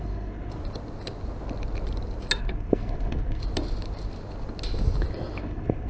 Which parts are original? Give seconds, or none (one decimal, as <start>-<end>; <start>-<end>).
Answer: 0.5-2.4; 3.4-5.4